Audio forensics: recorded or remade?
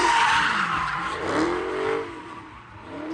remade